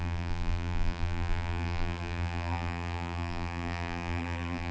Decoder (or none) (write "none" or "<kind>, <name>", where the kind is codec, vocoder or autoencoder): vocoder, BigVGAN v2